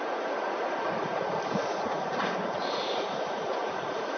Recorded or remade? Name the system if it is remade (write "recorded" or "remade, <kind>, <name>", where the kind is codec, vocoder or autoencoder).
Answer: remade, vocoder, Vocos